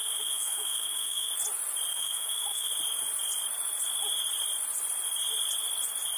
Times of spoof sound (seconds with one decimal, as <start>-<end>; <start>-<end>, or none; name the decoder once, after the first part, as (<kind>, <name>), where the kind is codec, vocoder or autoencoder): 0.0-1.3 (autoencoder, DAC-VAE); 1.9-2.7

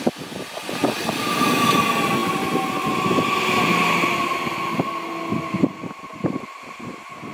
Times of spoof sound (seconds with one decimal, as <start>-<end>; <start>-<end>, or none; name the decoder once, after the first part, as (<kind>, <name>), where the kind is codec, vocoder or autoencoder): 0.8-1.6 (vocoder, BigVGAN v2)

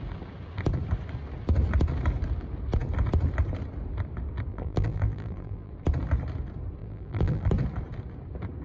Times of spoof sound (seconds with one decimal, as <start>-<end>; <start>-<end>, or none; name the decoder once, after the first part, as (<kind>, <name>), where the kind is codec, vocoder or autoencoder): 4.5-5.7 (vocoder, BigVGAN v2); 6.8-7.5

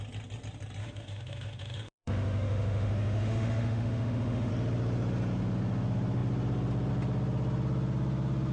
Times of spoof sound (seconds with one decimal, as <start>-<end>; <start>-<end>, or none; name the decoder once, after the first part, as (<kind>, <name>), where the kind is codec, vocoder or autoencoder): 0.8-4.5 (autoencoder, DAC-VAE)

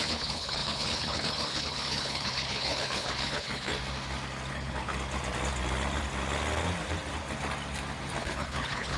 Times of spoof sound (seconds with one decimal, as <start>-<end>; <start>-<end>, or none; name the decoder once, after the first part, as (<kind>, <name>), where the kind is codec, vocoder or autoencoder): 0.0-3.7 (codec, HILCodec); 4.5-4.9; 8.2-9.0